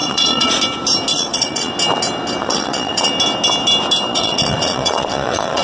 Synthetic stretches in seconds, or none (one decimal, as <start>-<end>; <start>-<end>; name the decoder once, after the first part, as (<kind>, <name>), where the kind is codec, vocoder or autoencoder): 0.0-0.6 (vocoder, Vocos); 1.1-1.7; 2.4-3.1; 4.1-5.6